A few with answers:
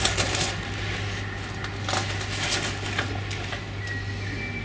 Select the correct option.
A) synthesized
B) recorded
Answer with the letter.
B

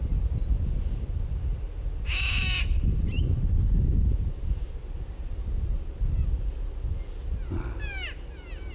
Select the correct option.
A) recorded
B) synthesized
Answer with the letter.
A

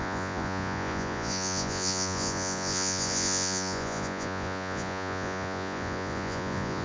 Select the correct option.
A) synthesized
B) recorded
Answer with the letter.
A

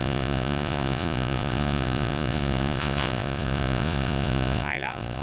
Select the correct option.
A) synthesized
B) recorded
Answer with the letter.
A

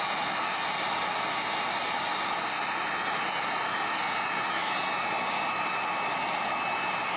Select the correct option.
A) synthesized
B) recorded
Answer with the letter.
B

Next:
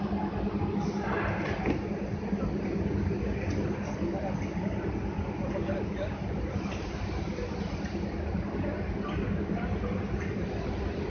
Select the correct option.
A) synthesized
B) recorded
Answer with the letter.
B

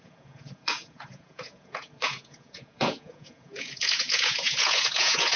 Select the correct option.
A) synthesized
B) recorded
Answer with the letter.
A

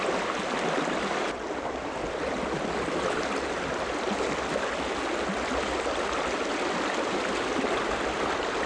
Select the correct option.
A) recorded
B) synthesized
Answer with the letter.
A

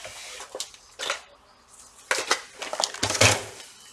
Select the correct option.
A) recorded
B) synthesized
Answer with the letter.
A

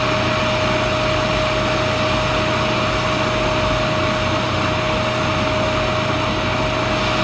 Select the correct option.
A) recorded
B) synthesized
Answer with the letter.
A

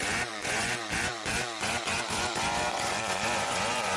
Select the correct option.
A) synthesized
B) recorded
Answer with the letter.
A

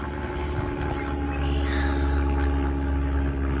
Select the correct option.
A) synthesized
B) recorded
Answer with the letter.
B